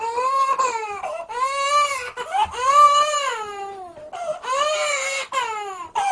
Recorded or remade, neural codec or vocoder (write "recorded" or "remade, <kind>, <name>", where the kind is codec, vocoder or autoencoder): recorded